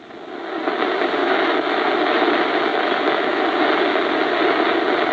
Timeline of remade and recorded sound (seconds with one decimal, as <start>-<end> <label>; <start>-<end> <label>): 0.0-1.2 recorded; 1.2-1.9 remade; 1.9-2.7 recorded; 2.7-3.4 remade; 3.4-5.1 recorded